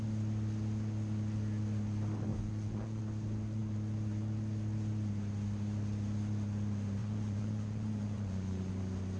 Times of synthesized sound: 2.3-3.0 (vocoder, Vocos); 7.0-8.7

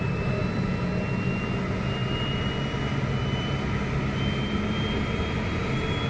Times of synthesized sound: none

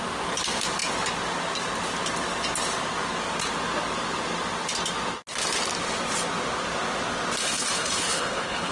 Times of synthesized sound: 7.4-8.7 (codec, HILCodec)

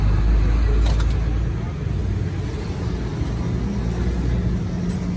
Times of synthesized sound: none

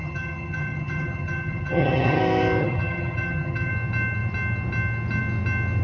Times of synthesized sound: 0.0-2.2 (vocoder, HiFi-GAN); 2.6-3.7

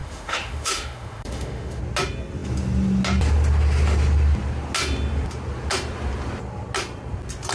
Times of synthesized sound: 0.0-1.8 (autoencoder, DAC-VAE)

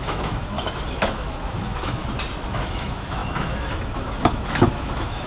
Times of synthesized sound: 0.0-2.0 (autoencoder, DAC-VAE); 2.5-5.3

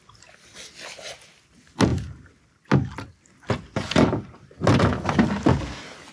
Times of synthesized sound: none